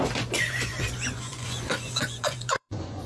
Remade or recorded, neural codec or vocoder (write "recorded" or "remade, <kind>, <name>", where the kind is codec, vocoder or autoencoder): remade, vocoder, Vocos